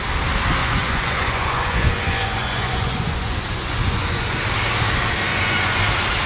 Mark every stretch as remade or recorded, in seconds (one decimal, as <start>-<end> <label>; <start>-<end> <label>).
0.0-0.6 recorded; 0.6-4.4 remade; 4.4-5.3 recorded; 5.3-5.8 remade; 5.8-6.3 recorded